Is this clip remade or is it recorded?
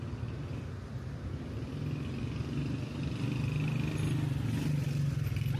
recorded